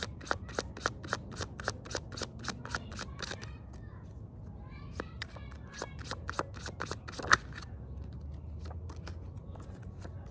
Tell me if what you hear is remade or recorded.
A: recorded